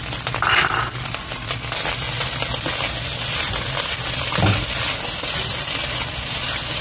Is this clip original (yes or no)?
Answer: yes